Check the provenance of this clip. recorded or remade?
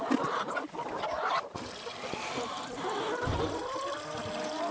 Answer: recorded